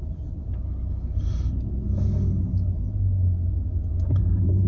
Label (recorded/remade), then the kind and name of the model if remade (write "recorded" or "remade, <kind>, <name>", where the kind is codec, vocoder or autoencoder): recorded